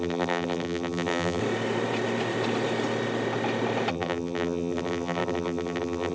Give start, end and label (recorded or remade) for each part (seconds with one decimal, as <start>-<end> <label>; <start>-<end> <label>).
0.0-1.4 remade; 1.4-3.9 recorded; 3.9-6.1 remade